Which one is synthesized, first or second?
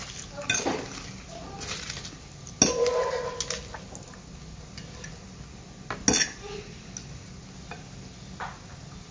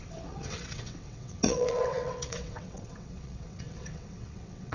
second